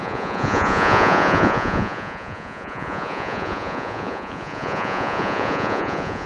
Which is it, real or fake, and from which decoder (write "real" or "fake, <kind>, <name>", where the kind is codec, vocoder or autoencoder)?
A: fake, vocoder, Vocos